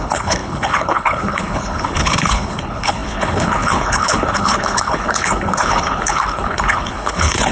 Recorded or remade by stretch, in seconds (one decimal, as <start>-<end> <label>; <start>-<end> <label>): 0.0-7.5 remade